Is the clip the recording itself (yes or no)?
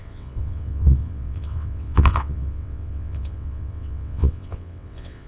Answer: no